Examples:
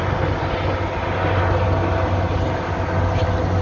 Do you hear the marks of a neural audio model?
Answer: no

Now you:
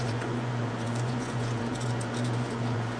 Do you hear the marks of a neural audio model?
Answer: yes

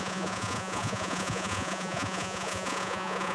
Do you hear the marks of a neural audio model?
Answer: yes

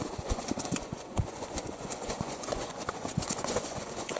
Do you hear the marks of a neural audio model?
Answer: yes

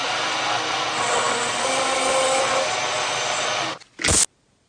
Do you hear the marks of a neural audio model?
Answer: no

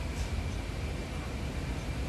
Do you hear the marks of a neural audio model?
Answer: no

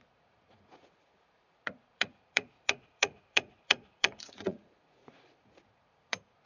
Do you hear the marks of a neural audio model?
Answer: yes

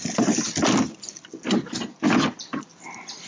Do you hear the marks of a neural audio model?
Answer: no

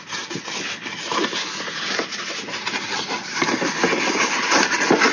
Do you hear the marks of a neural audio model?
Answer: no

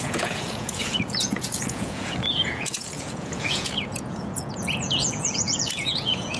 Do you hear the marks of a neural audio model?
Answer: yes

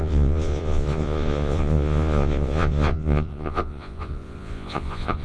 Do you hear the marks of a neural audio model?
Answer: yes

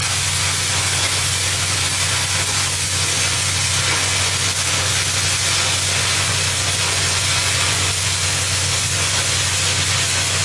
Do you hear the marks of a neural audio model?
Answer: yes